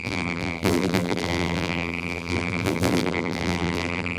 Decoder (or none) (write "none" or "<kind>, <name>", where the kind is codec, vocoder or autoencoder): vocoder, BigVGAN v2